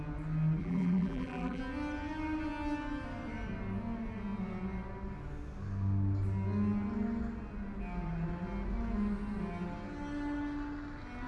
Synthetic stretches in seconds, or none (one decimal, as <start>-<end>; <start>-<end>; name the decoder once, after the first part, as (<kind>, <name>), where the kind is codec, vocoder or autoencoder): 0.6-1.6 (vocoder, BigVGAN v2)